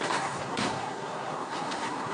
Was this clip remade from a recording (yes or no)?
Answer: yes